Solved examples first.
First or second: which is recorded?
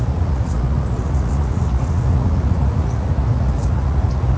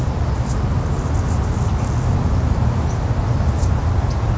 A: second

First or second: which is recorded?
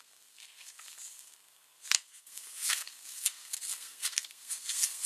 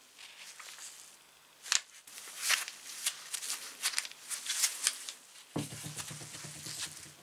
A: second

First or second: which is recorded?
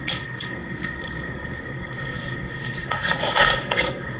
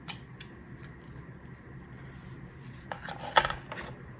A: second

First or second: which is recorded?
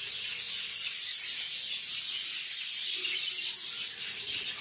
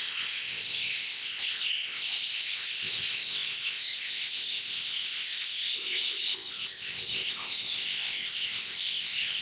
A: first